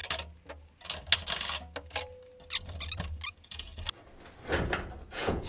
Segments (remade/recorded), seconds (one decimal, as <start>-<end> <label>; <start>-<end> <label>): 0.0-3.3 recorded; 3.3-3.7 remade; 3.7-5.1 recorded; 5.1-5.5 remade